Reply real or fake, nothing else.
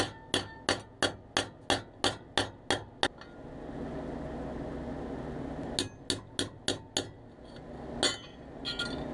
real